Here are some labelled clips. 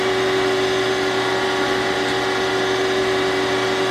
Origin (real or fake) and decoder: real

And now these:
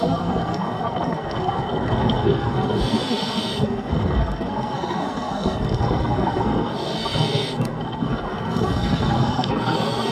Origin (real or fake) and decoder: fake, codec, SNAC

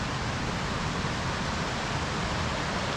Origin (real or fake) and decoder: real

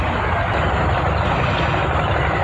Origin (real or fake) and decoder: real